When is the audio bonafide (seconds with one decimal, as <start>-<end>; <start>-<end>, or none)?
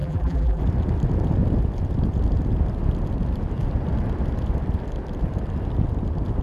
0.6-6.4